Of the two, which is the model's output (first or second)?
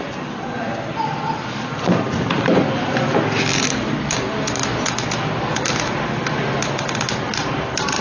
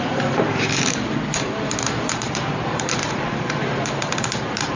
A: second